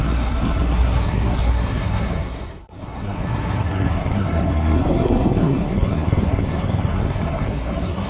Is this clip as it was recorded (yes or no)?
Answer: no